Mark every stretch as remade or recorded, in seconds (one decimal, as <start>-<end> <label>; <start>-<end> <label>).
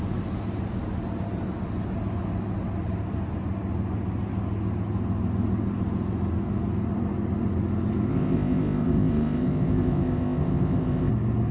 0.0-8.1 recorded; 8.1-11.1 remade; 11.1-11.5 recorded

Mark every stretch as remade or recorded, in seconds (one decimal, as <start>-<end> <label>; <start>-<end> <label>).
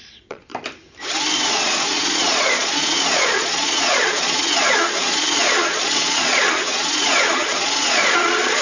0.0-0.5 remade; 0.5-1.5 recorded; 1.5-8.6 remade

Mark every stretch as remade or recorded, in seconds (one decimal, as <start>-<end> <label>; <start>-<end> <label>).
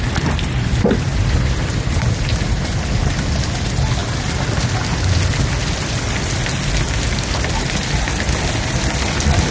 0.0-9.5 recorded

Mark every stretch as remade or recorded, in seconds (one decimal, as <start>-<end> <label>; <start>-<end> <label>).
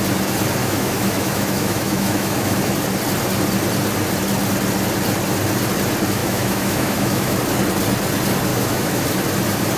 0.0-0.6 recorded; 0.6-2.7 remade; 2.7-6.2 recorded; 6.2-7.4 remade; 7.4-8.5 recorded; 8.5-9.0 remade; 9.0-9.8 recorded